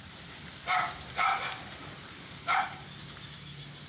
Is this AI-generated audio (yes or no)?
yes